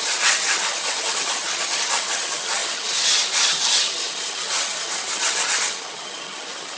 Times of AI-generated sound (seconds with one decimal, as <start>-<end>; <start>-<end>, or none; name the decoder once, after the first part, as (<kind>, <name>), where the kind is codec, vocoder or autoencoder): 0.0-6.8 (vocoder, HiFi-GAN)